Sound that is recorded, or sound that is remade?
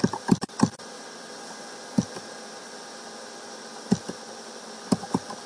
recorded